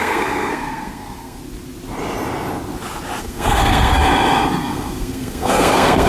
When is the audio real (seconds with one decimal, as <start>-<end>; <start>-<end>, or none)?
1.4-3.2; 4.0-4.6